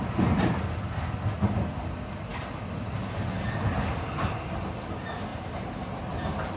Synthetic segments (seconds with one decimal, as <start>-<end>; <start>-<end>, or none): 5.3-5.8